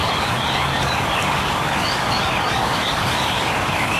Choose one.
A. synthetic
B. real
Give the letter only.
A